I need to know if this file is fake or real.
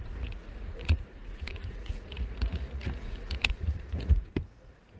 fake